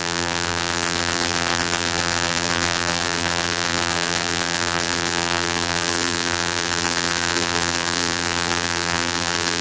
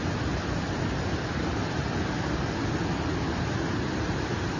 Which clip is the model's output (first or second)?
first